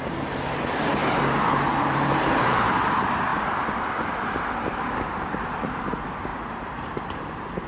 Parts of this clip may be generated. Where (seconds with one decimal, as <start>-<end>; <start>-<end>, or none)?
1.0-2.7; 6.3-7.3